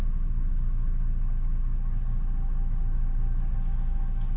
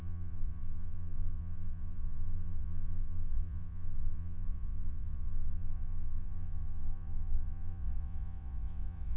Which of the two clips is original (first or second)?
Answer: first